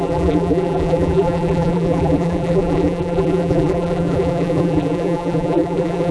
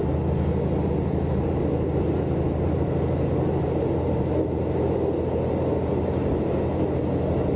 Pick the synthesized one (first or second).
first